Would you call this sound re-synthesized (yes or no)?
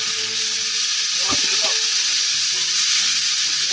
no